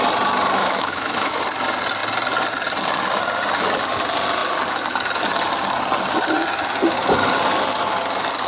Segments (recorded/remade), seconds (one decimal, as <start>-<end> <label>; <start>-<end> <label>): 0.0-0.6 recorded; 0.6-1.4 remade; 1.4-8.5 recorded